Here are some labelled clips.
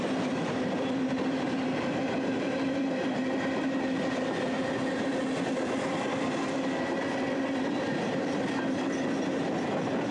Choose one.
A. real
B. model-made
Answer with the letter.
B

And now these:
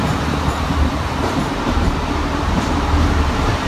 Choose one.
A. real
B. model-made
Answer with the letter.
B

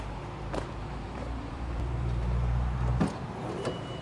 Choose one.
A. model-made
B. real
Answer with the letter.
A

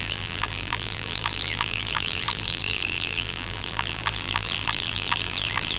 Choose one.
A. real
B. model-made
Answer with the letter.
B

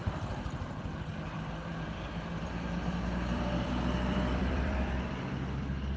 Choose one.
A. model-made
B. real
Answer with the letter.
A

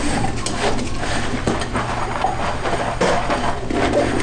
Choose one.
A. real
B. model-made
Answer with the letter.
A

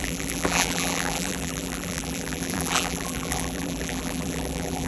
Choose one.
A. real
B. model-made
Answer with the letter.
B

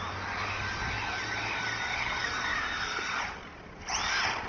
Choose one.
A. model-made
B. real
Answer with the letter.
B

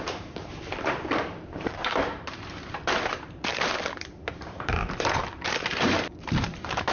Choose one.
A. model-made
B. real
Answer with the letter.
A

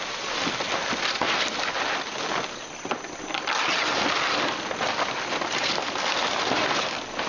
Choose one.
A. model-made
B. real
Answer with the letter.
B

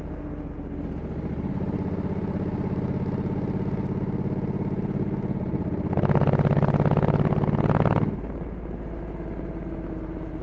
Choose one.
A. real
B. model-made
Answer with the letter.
A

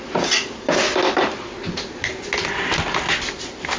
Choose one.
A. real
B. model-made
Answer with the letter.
A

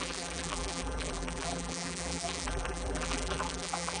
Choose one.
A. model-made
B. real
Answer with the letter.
A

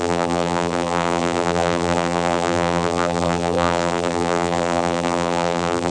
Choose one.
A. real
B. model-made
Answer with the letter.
B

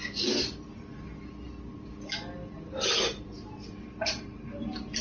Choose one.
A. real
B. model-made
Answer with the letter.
A